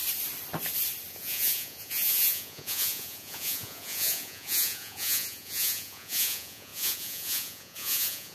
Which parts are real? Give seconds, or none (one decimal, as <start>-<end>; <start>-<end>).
0.0-1.1